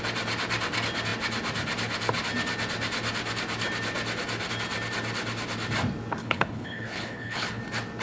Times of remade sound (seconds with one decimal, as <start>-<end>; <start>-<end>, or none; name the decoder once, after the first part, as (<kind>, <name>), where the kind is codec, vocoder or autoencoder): 6.2-7.6 (codec, HILCodec)